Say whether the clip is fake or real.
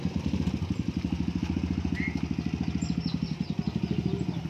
real